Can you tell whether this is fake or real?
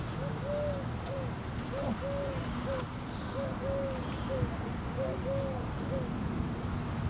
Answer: real